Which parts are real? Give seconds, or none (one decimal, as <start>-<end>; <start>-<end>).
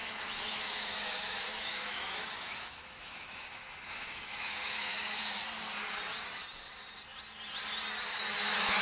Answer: 5.2-8.8